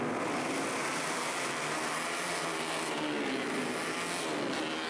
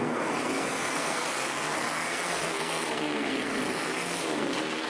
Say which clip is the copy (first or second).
second